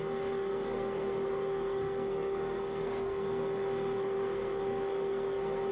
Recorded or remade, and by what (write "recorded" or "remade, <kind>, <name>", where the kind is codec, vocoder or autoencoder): remade, codec, SNAC